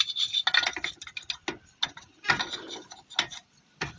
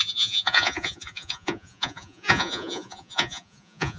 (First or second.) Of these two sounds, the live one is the first